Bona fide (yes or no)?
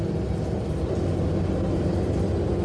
yes